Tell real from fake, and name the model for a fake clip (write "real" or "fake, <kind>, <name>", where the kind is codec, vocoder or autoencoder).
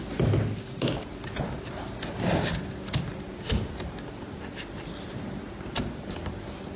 real